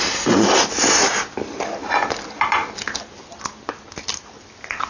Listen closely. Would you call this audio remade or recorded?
recorded